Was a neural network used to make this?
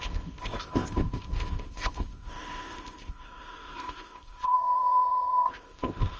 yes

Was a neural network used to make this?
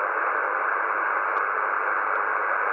no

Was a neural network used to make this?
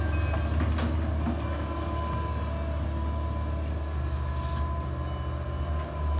no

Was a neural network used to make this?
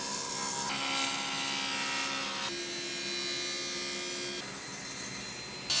no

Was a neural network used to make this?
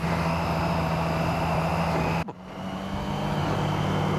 no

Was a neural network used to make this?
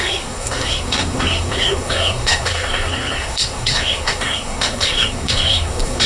yes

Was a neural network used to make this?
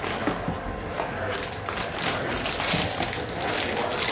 no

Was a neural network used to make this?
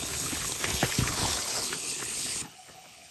yes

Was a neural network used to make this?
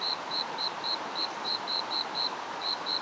yes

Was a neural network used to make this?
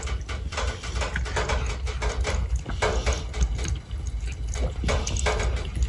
no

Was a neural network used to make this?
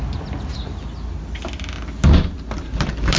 no